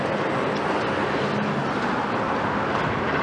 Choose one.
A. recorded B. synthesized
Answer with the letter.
A